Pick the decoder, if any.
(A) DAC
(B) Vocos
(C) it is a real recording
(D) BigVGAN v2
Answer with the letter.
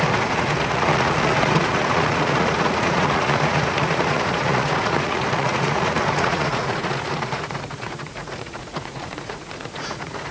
B